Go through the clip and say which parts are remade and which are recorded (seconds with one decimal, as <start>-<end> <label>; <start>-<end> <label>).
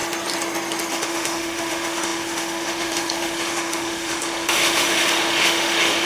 0.0-0.9 recorded; 0.9-6.1 remade